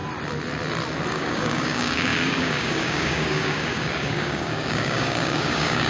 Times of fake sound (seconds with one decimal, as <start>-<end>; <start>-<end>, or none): 1.1-5.9